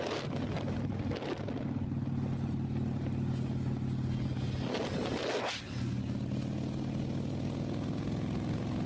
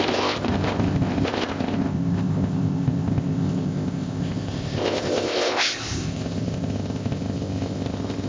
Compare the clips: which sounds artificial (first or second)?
second